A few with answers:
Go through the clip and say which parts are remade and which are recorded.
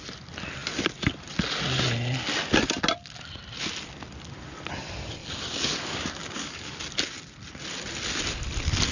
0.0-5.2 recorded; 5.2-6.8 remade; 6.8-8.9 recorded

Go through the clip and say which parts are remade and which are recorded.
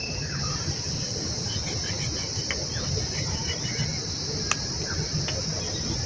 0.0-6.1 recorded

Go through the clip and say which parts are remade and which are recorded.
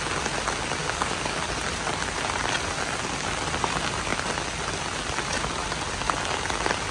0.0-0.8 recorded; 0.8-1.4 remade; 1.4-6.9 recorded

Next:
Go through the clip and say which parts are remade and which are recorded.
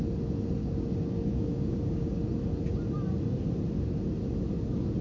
0.0-0.6 recorded; 0.6-2.2 remade; 2.2-5.0 recorded